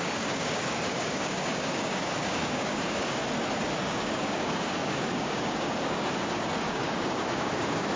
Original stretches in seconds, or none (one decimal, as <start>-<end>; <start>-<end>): 3.2-3.8